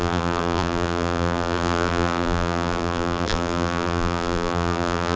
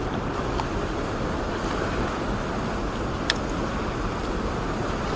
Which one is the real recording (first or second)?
second